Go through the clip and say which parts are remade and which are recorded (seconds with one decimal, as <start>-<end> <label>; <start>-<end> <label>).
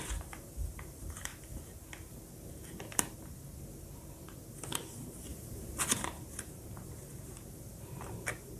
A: 0.0-1.3 remade; 1.3-4.6 recorded; 4.6-8.6 remade